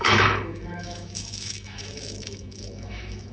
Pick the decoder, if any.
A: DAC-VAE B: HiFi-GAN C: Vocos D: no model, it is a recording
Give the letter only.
A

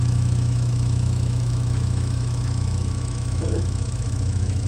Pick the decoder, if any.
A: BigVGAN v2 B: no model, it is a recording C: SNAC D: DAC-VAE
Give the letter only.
D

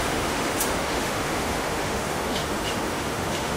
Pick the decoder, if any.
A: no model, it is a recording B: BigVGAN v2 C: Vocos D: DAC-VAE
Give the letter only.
D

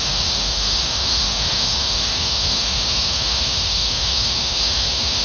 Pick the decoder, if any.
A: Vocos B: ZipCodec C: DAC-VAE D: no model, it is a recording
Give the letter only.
C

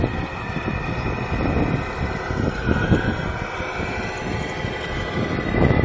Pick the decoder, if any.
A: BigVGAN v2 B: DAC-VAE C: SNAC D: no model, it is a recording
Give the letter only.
D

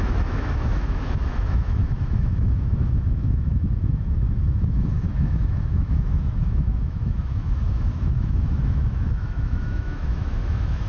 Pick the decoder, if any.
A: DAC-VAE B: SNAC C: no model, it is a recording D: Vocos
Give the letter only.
A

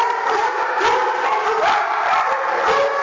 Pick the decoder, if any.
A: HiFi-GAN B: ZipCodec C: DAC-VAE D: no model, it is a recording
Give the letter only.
D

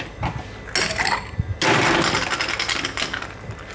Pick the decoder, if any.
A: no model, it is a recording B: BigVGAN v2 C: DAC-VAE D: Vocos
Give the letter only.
A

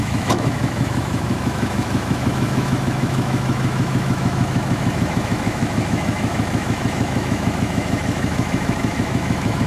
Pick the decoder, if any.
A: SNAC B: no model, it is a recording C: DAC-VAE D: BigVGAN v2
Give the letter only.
C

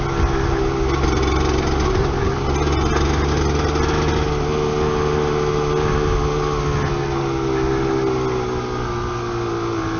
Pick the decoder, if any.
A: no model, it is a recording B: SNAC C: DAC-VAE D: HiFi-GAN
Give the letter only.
A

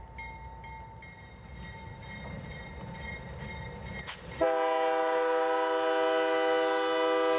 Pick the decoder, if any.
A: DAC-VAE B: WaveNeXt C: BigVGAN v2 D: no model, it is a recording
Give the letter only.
D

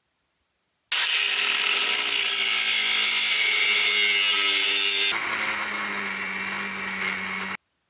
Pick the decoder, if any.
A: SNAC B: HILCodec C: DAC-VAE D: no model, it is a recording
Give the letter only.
D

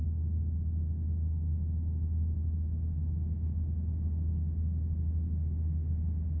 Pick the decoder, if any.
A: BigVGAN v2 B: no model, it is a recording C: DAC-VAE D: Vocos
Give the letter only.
B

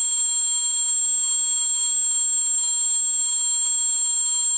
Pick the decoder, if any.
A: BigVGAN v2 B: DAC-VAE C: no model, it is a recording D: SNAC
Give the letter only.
C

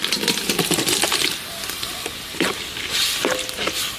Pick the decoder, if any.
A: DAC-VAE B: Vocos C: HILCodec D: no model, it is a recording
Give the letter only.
D